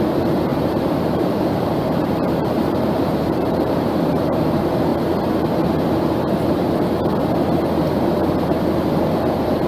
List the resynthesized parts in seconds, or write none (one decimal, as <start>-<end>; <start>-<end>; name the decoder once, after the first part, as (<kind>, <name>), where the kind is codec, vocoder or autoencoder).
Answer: 0.5-4.2 (vocoder, BigVGAN v2)